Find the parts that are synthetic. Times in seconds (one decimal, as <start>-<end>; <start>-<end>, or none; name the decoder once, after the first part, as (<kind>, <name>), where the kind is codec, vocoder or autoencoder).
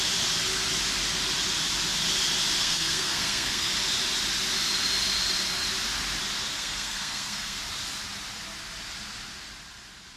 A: 2.6-3.7 (codec, SNAC); 6.5-7.6